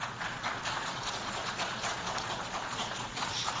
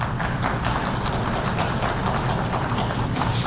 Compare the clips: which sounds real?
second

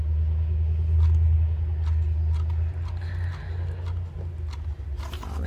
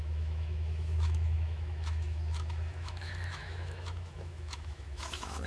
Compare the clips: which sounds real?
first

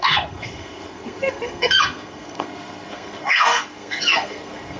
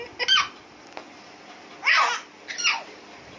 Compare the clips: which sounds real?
second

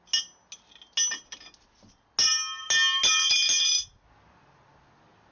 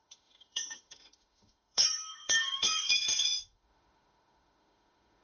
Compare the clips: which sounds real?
first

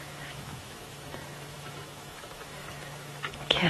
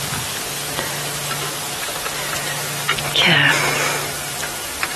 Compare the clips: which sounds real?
second